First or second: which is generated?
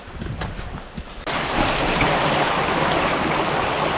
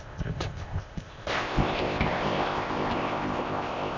second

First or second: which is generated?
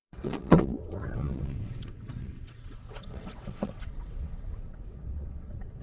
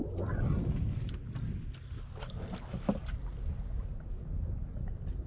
first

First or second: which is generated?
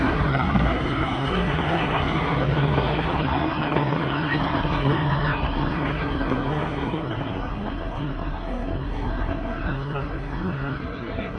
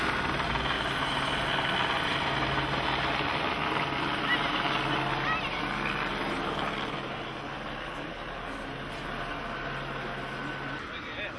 first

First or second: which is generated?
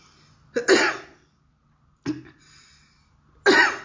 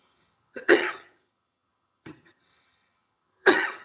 second